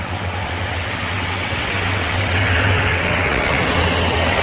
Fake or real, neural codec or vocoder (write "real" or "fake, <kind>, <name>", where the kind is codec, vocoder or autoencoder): fake, vocoder, WaveNeXt